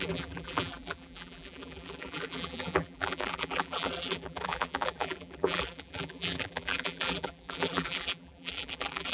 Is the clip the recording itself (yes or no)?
no